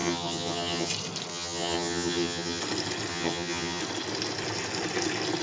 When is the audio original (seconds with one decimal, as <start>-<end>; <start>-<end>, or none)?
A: 0.9-1.3; 2.6-3.1; 3.8-5.4